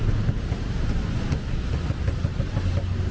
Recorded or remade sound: recorded